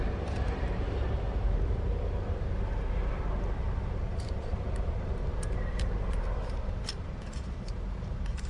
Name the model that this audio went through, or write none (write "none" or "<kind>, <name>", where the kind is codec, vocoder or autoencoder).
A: vocoder, BigVGAN v2